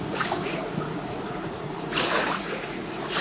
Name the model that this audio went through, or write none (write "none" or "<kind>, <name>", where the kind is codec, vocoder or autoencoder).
vocoder, Vocos